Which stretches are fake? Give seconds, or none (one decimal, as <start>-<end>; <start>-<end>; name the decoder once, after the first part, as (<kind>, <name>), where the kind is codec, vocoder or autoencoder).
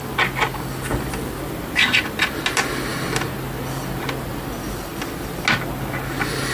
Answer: none